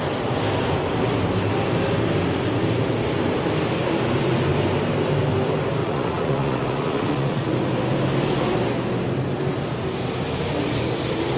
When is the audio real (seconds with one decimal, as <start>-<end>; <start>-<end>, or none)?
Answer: 0.0-5.8; 7.5-11.4